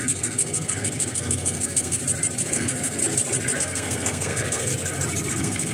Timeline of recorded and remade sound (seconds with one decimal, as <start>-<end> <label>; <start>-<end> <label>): 0.0-2.0 remade; 2.0-2.5 recorded; 2.5-3.0 remade; 3.0-3.6 recorded; 3.6-4.7 remade; 4.7-5.3 recorded; 5.3-5.7 remade